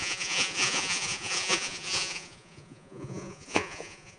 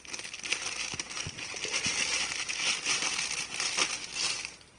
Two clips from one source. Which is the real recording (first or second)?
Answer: second